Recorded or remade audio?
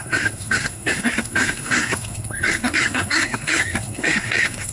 remade